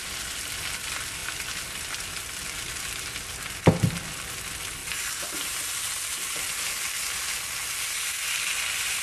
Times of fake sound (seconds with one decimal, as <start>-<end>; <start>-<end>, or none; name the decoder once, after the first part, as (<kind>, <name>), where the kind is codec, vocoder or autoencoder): none